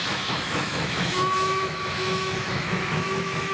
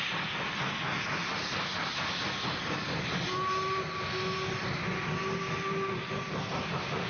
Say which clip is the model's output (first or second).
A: first